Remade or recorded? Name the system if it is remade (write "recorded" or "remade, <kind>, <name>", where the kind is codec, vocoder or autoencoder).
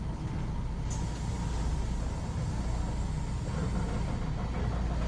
recorded